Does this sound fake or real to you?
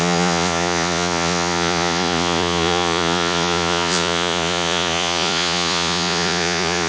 fake